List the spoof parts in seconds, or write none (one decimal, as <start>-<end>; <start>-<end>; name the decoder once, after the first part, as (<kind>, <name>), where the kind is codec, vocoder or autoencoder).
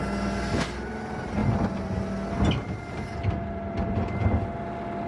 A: none